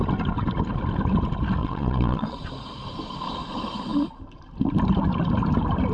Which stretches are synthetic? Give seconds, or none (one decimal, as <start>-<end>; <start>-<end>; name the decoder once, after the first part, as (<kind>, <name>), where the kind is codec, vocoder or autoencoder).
1.6-2.5 (vocoder, Vocos)